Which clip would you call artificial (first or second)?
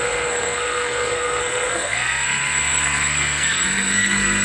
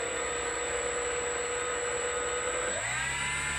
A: first